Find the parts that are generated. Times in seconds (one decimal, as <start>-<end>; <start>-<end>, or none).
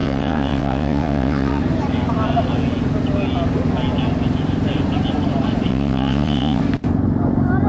0.0-1.6; 5.7-6.6